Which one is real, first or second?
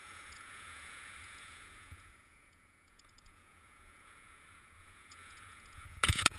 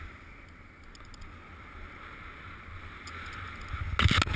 second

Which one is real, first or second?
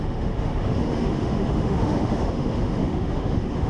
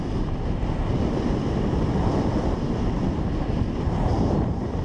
second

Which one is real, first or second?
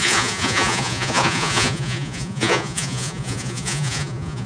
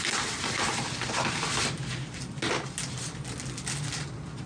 second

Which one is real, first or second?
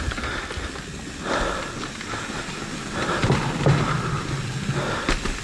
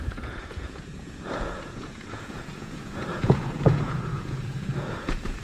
first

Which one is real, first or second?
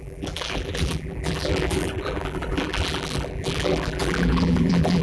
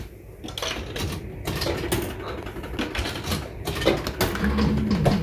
second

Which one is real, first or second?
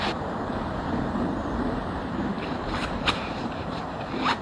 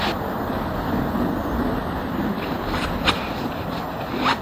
second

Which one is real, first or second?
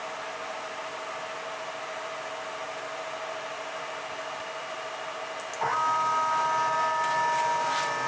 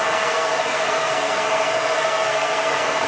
first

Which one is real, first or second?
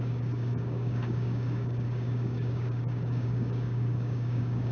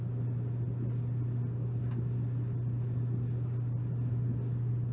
second